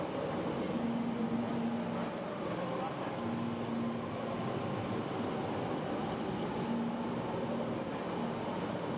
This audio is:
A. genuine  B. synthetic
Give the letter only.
A